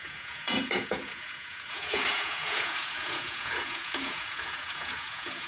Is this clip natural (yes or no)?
no